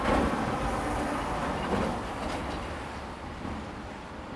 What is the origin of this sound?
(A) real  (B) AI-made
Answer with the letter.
A